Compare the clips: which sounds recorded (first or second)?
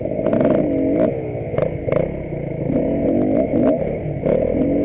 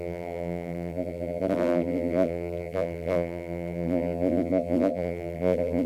first